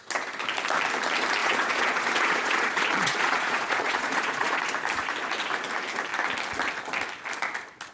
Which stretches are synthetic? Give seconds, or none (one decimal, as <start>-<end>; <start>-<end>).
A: 1.4-4.6